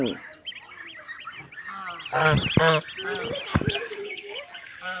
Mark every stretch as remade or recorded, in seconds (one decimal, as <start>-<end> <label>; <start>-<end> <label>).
0.0-3.5 recorded; 3.5-5.0 remade